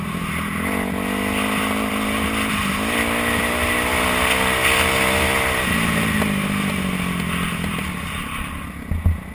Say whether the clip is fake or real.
real